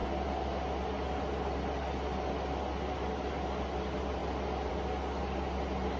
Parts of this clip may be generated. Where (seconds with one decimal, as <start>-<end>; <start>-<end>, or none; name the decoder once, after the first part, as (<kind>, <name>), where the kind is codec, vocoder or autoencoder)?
none